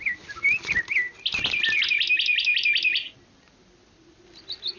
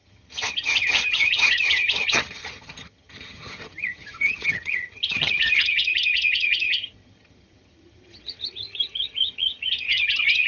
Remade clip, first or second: second